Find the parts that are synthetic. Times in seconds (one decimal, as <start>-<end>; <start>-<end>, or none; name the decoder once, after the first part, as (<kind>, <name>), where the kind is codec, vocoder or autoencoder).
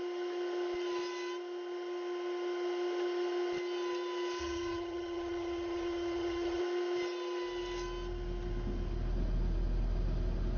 4.4-6.6 (vocoder, HiFi-GAN)